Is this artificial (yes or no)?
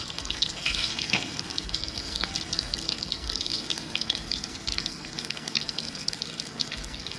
yes